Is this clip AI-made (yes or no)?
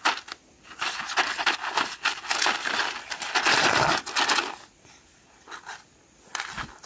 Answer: no